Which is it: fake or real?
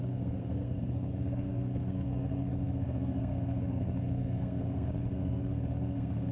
fake